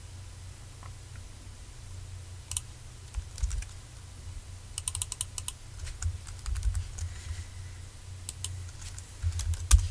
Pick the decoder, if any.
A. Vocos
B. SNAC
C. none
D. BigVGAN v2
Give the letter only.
C